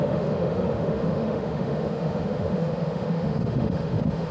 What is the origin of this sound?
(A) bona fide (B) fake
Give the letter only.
B